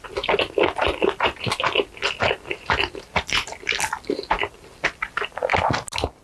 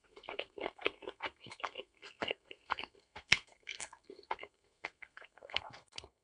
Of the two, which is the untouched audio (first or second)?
first